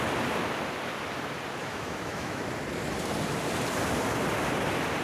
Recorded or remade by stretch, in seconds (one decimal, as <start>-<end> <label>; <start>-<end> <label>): 0.0-1.6 recorded; 1.6-2.4 remade; 2.4-5.0 recorded